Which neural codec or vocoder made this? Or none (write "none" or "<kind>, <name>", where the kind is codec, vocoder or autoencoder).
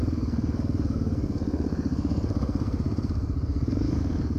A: codec, SNAC